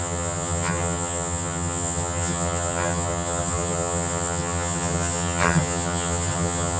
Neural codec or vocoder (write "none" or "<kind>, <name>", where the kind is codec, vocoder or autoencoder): vocoder, HiFi-GAN